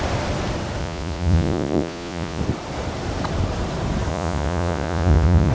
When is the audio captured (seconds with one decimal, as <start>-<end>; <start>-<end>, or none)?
0.0-0.8; 2.4-4.1